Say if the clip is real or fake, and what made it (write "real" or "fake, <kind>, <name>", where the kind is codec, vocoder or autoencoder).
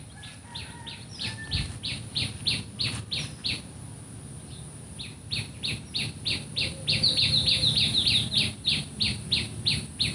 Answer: real